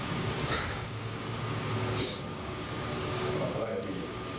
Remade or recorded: remade